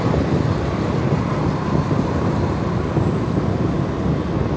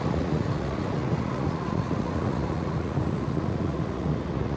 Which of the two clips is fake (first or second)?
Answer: second